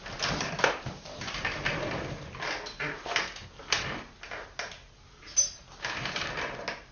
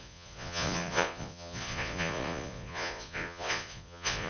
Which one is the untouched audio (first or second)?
first